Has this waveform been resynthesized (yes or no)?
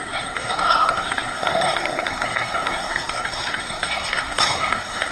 yes